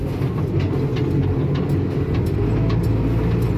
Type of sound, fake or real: real